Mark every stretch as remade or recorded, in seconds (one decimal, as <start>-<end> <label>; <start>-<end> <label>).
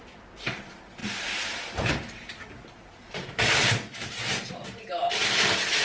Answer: 0.0-5.8 remade